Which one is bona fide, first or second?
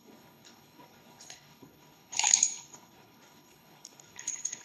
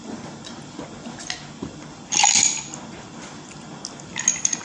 second